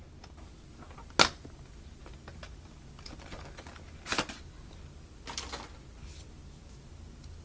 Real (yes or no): yes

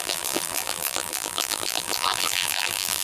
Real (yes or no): no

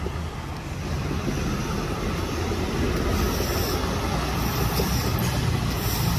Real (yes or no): yes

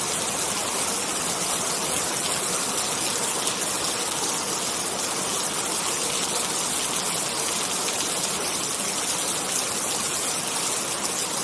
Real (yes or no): yes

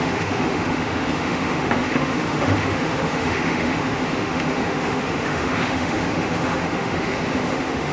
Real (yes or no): no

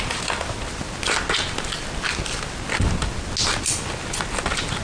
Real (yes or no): yes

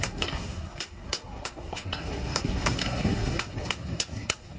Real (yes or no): no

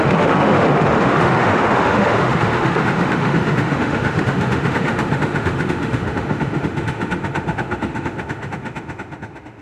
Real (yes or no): no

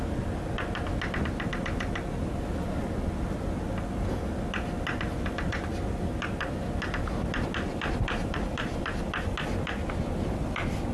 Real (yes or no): yes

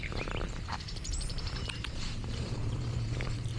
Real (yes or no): no